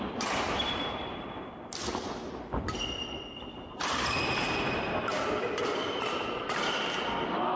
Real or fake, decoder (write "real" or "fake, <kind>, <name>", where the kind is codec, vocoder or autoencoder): real